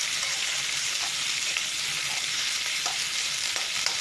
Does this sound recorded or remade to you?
remade